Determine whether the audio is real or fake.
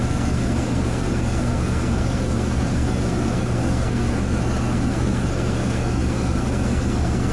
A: fake